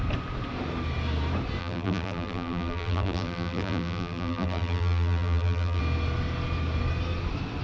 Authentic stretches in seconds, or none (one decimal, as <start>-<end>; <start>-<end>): 0.0-1.6; 5.8-7.6